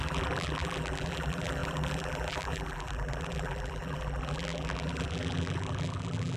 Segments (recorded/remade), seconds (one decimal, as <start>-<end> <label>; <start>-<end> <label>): 0.0-6.4 remade